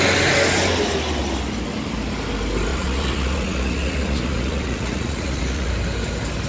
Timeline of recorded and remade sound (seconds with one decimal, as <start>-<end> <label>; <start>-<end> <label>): 0.0-2.7 recorded; 2.7-5.7 remade; 5.7-6.5 recorded